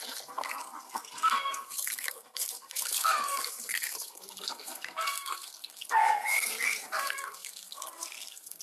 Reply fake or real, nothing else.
fake